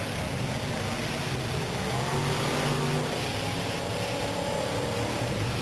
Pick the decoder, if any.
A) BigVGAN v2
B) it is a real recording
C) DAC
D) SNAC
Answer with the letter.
B